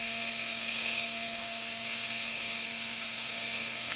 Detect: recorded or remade remade